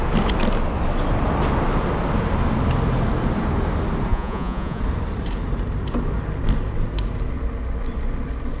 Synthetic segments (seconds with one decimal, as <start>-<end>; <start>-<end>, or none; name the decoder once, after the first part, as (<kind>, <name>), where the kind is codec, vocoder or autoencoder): 4.1-4.8 (vocoder, Vocos)